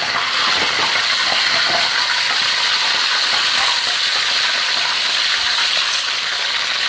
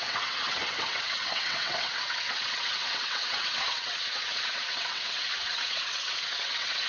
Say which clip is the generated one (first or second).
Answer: second